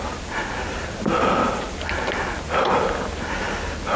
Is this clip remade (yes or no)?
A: no